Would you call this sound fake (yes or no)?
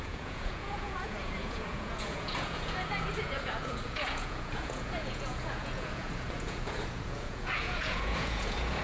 yes